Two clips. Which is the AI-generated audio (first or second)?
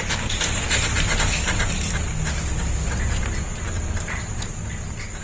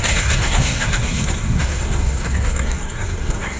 second